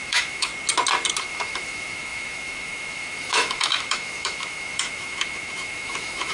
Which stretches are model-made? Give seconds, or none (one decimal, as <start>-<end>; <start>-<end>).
0.0-0.5; 1.2-6.3